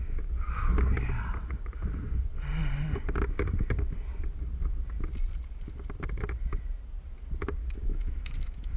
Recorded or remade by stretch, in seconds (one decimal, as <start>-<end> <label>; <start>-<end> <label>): 0.0-7.6 recorded; 7.6-8.8 remade